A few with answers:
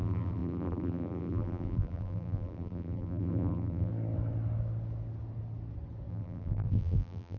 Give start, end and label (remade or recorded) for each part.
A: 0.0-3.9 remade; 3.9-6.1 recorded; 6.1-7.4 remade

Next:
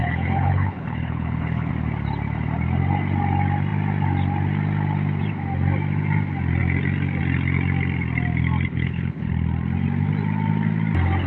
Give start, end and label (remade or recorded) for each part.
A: 0.0-1.7 remade; 1.7-8.7 recorded; 8.7-9.3 remade; 9.3-11.3 recorded

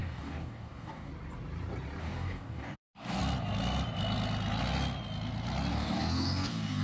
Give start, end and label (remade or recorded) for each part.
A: 0.0-1.1 remade; 1.1-2.0 recorded; 2.0-3.2 remade; 3.2-5.7 recorded; 5.7-6.8 remade